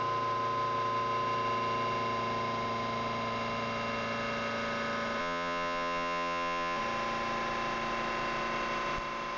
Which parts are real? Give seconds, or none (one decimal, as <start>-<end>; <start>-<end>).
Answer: 0.0-5.2; 6.8-9.4